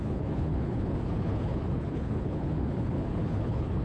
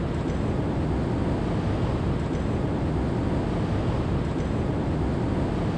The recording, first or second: second